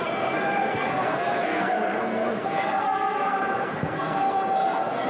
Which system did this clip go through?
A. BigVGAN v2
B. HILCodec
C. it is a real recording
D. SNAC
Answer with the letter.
D